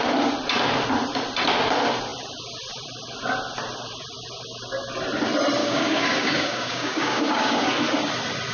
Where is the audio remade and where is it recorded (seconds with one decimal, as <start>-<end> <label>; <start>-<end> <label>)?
0.0-5.6 recorded; 5.6-7.7 remade; 7.7-8.5 recorded